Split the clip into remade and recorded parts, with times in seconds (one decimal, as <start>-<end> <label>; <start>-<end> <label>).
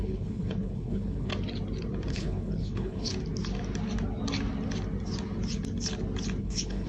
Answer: 0.0-1.3 remade; 1.3-2.1 recorded; 2.1-3.1 remade; 3.1-6.4 recorded; 6.4-6.9 remade